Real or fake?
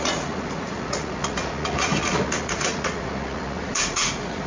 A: fake